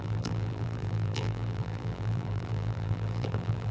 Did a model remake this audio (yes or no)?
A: yes